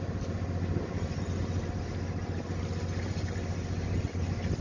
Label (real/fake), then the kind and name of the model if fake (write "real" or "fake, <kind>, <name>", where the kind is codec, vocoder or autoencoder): real